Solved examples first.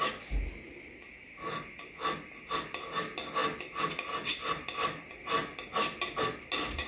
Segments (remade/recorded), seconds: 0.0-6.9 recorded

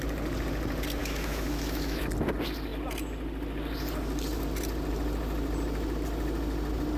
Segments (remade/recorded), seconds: 0.0-1.0 recorded; 1.0-2.0 remade; 2.0-7.0 recorded